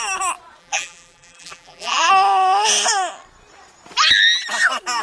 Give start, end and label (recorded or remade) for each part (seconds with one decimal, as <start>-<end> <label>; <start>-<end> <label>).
0.0-0.6 recorded; 0.6-2.1 remade; 2.1-5.0 recorded